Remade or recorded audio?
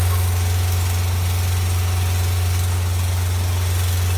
recorded